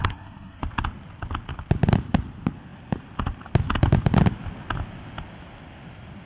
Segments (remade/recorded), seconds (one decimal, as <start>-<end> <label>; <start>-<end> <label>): 0.0-0.6 remade; 0.6-6.3 recorded